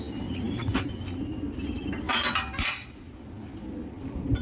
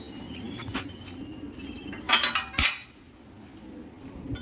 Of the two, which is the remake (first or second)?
first